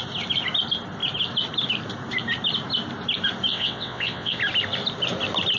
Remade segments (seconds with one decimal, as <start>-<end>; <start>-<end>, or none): 3.5-4.4